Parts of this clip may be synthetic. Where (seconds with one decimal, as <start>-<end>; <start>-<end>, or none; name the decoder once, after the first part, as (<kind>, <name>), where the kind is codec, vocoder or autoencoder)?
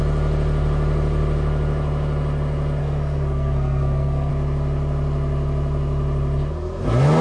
2.8-4.3 (codec, SNAC)